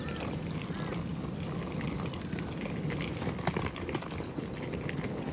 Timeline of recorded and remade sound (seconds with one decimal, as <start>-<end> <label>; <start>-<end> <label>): 0.0-5.3 recorded